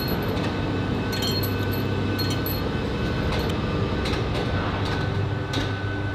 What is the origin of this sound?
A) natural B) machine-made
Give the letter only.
A